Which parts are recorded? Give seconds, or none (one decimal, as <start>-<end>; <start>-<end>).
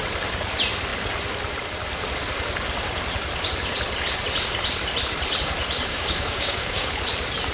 0.0-5.9; 6.9-7.5